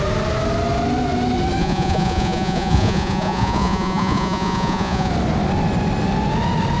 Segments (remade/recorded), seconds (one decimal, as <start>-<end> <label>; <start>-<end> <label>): 0.0-1.6 recorded; 1.6-5.1 remade; 5.1-6.8 recorded